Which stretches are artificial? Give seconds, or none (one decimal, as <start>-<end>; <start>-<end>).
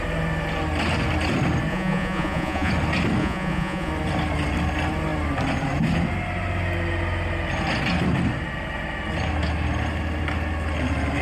1.7-2.7; 3.2-3.9